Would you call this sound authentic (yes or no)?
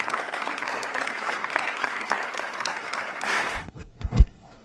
no